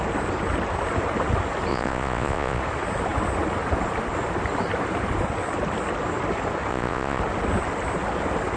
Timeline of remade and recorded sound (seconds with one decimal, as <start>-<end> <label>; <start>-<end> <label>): 0.0-1.7 recorded; 1.7-2.6 remade; 2.6-6.7 recorded; 6.7-7.2 remade; 7.2-8.6 recorded